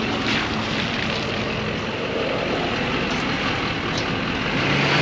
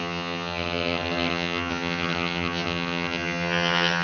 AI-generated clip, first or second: second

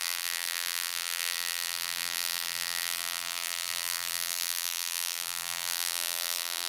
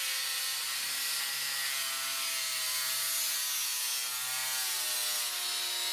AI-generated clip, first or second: first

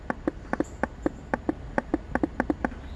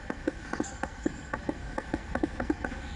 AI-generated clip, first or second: second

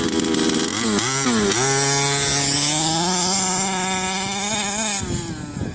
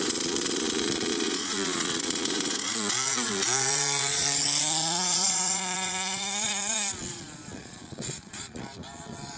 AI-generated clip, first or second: second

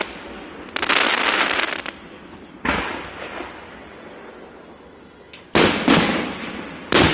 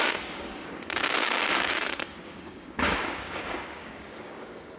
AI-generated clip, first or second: second